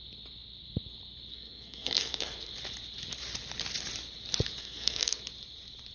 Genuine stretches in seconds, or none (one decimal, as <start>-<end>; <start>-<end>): 0.0-1.3; 2.5-4.6; 5.2-5.9